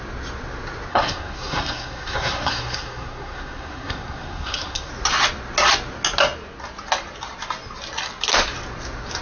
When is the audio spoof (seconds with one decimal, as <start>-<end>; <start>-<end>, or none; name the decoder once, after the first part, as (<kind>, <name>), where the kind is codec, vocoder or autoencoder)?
0.9-4.9 (codec, SNAC)